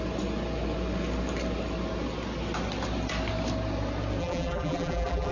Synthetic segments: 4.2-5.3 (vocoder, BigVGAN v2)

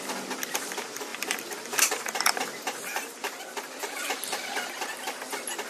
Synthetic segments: 1.1-4.5 (vocoder, BigVGAN v2)